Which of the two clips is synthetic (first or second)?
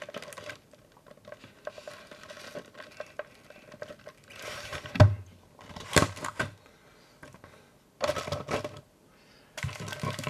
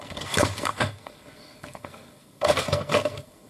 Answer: second